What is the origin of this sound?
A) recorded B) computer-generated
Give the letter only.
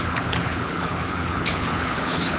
B